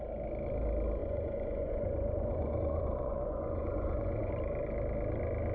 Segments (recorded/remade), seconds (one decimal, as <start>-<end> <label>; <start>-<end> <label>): 0.0-1.0 recorded; 1.0-4.3 remade; 4.3-5.5 recorded